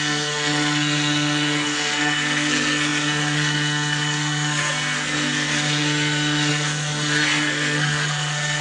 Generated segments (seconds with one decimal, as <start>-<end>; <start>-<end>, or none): 0.0-8.6